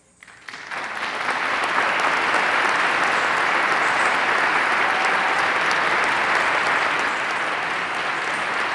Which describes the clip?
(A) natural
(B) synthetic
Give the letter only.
A